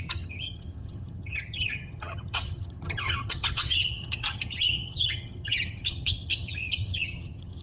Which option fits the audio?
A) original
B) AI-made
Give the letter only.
B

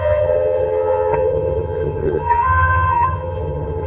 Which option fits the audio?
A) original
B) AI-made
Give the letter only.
B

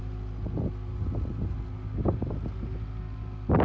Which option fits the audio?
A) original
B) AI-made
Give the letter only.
A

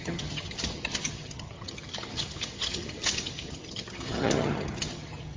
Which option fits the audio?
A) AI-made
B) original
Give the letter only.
A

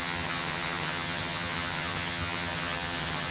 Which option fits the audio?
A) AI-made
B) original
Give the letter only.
A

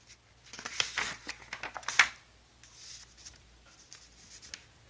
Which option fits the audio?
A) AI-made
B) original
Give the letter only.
B